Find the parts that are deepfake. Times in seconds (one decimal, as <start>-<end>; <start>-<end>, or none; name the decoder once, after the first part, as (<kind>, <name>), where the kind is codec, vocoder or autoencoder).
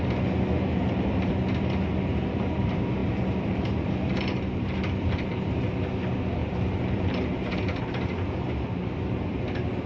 0.7-1.3 (vocoder, BigVGAN v2); 3.0-5.4; 6.4-7.6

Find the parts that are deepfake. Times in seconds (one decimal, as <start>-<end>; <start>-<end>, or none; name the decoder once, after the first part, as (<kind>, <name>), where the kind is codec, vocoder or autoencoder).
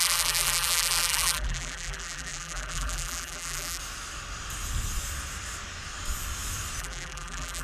0.0-3.8 (vocoder, BigVGAN v2); 6.8-7.6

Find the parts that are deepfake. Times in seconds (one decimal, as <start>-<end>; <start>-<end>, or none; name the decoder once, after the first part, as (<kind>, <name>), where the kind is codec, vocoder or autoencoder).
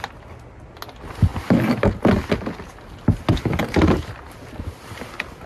none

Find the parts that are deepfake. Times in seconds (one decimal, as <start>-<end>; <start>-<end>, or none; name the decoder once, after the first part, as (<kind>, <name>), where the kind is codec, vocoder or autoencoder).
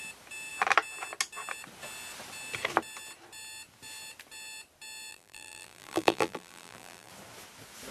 5.1-7.1 (vocoder, BigVGAN v2)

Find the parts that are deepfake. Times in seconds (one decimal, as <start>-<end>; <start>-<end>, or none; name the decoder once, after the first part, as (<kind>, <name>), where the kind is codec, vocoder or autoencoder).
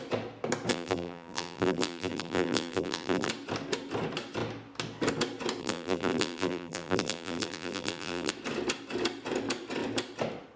0.7-3.3 (vocoder, BigVGAN v2); 5.6-8.3